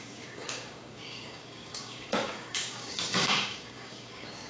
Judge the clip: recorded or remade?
remade